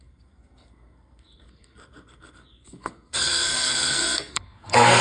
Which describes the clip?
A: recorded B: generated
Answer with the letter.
B